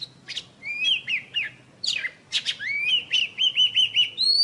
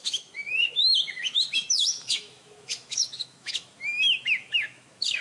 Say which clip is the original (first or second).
first